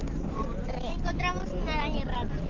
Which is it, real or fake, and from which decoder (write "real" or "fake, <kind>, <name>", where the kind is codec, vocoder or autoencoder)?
real